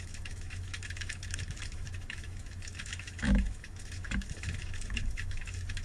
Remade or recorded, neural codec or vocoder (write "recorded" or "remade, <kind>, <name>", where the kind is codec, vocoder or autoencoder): remade, autoencoder, DAC-VAE